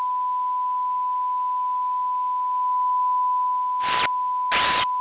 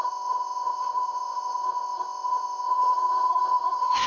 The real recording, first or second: first